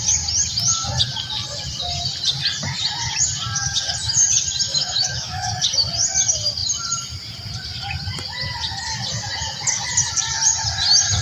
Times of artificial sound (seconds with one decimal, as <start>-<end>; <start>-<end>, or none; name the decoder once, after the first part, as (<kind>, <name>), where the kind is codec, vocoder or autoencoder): 4.7-5.5 (autoencoder, DAC-VAE)